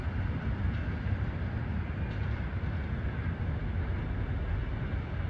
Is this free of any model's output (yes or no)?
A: yes